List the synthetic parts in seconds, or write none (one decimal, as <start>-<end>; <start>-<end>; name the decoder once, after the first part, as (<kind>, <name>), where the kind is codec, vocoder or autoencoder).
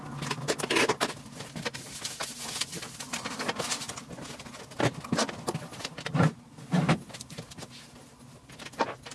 none